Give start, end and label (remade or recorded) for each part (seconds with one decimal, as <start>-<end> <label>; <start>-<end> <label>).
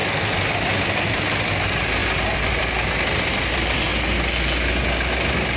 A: 0.0-3.9 remade; 3.9-5.6 recorded